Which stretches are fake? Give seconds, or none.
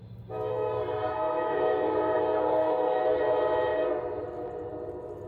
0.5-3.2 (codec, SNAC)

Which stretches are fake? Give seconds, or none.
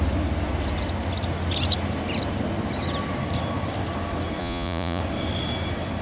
4.4-5.0 (vocoder, Vocos)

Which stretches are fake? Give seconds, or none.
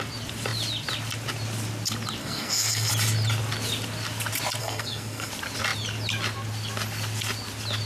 2.2-2.9 (codec, SNAC); 4.6-5.3